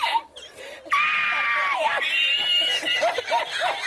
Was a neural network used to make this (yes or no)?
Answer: no